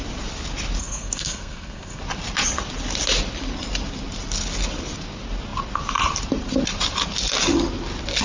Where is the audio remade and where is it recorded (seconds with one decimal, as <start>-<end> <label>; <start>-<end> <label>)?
0.0-0.8 recorded; 0.8-2.0 remade; 2.0-8.2 recorded